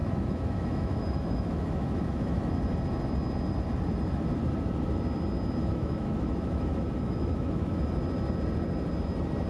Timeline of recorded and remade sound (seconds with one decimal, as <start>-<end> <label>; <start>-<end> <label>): 0.0-2.5 remade; 2.5-5.6 recorded; 5.6-7.8 remade; 7.8-9.5 recorded